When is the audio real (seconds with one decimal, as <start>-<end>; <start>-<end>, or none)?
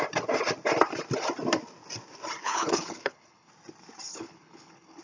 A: 0.0-2.4; 3.5-4.1